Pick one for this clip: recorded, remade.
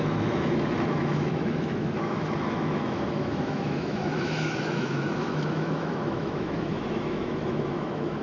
remade